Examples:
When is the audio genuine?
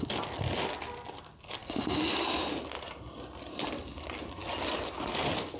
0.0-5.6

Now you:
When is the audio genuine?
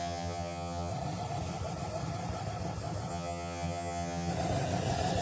0.9-3.1; 4.3-5.2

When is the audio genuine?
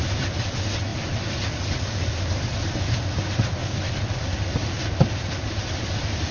0.0-6.3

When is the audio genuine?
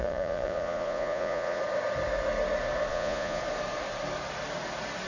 1.6-2.9; 3.4-5.1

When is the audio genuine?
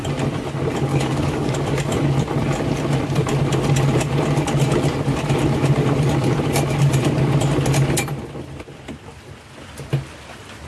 0.0-0.9; 1.5-10.7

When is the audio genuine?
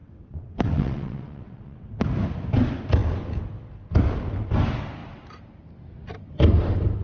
1.9-7.0